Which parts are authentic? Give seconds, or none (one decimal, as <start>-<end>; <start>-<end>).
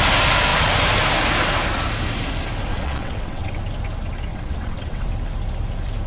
0.0-2.7; 3.6-4.3; 5.1-6.1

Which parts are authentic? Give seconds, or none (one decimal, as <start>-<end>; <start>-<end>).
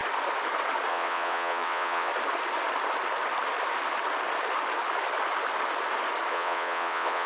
0.0-0.9; 2.1-6.3